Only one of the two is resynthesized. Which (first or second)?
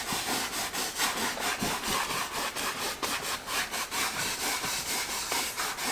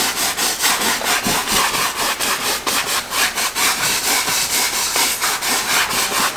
first